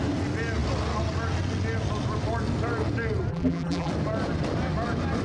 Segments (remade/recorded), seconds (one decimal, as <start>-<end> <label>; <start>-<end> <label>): 0.0-3.3 recorded; 3.3-3.9 remade; 3.9-5.2 recorded